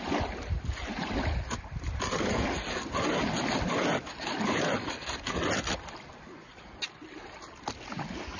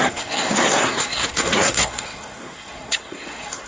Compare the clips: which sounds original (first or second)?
first